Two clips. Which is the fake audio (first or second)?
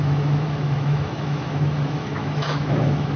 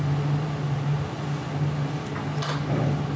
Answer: first